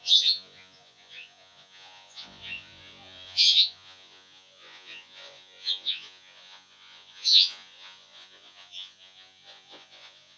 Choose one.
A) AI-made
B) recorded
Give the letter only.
A